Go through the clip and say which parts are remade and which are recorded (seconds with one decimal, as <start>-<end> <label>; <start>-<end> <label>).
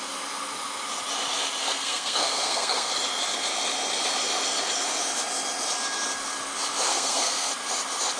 0.0-1.6 recorded; 1.6-2.9 remade; 2.9-6.9 recorded; 6.9-7.5 remade; 7.5-8.2 recorded